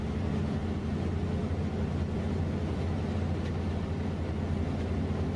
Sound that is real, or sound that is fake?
real